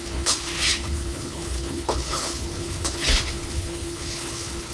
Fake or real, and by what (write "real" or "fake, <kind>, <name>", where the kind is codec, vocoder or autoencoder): fake, codec, HILCodec